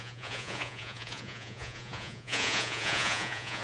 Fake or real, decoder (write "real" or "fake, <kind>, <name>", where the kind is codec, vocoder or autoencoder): fake, vocoder, Vocos